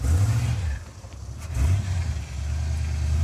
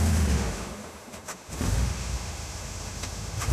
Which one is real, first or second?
first